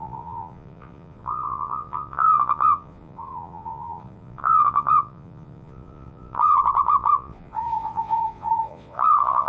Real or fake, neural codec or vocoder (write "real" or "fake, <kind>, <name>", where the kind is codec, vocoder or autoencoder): fake, vocoder, Vocos